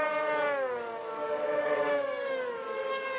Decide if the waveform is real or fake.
fake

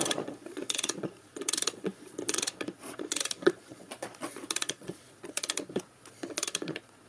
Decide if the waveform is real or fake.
fake